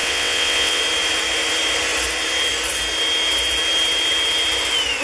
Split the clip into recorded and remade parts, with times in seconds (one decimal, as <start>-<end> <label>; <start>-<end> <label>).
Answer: 0.0-0.8 remade; 0.8-5.0 recorded

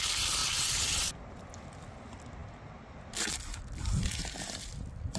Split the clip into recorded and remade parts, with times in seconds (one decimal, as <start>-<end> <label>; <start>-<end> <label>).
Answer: 0.0-0.4 recorded; 0.4-1.1 remade; 1.1-5.2 recorded

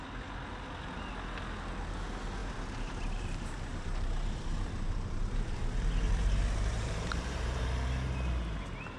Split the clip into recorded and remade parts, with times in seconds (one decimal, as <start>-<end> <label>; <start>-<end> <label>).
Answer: 0.0-2.4 recorded; 2.4-7.6 remade; 7.6-9.0 recorded

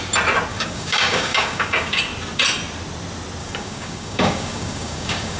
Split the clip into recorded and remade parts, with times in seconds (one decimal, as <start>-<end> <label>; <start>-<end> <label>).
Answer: 0.0-0.5 recorded; 0.5-2.0 remade; 2.0-3.4 recorded; 3.4-5.4 remade

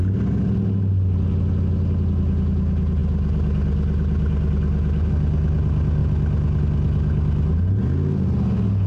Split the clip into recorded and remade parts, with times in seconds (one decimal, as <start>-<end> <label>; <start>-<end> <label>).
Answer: 0.0-8.9 recorded

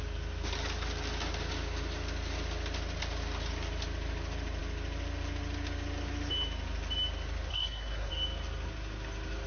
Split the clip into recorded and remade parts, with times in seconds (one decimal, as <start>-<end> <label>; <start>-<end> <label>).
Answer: 0.0-7.5 recorded; 7.5-8.1 remade; 8.1-9.5 recorded